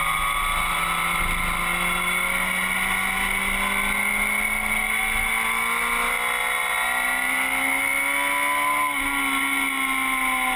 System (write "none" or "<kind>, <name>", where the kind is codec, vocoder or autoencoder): none